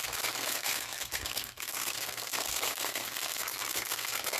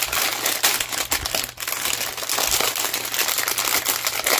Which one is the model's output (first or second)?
first